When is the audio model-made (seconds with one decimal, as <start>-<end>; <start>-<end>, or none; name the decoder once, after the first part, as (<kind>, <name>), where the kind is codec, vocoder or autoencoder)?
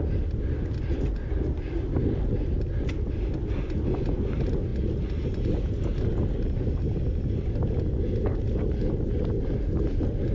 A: none